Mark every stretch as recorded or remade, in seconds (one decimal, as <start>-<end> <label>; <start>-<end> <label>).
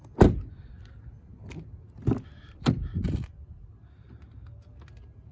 0.0-5.3 recorded